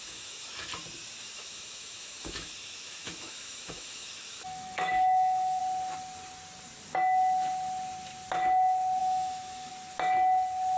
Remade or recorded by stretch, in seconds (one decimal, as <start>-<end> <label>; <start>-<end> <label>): 0.0-0.7 remade; 0.7-1.2 recorded; 1.2-5.6 remade; 5.6-9.0 recorded; 9.0-9.7 remade; 9.7-10.8 recorded